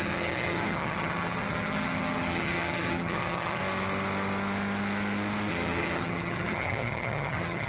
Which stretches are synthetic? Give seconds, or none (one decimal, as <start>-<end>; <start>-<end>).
0.0-3.6; 5.5-7.7